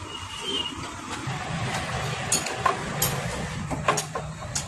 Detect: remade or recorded recorded